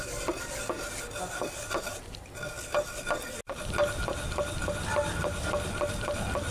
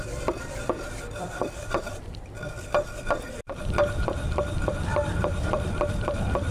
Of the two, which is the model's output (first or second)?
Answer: second